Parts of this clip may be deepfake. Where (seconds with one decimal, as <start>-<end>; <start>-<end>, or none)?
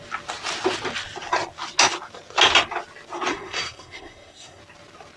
3.3-4.6